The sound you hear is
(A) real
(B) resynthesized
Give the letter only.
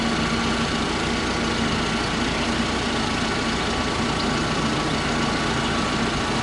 A